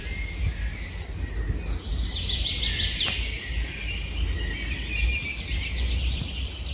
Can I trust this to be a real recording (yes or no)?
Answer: yes